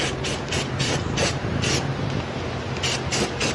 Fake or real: real